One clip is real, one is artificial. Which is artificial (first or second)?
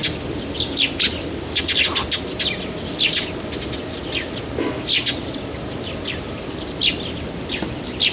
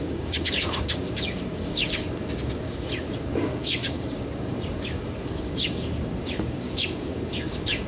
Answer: second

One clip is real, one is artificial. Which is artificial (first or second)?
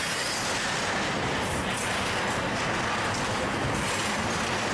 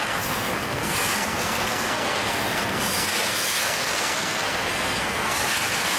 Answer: second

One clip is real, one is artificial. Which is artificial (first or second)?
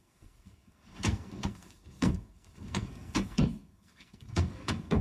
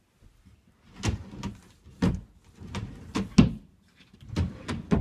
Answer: first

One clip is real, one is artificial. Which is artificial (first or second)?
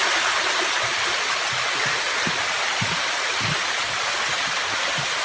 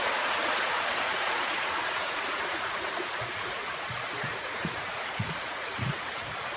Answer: second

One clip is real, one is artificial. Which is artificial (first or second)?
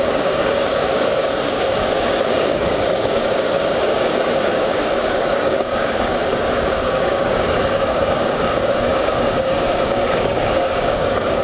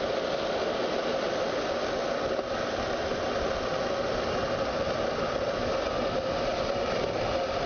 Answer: first